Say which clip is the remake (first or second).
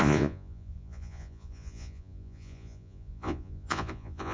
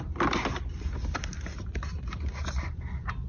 first